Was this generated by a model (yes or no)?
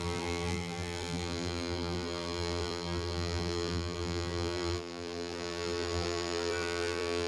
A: yes